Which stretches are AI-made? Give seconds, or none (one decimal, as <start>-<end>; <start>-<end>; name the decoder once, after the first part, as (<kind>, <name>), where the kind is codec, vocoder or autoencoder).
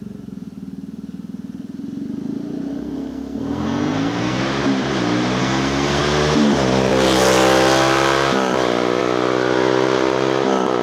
2.7-4.4 (codec, SNAC); 5.4-6.0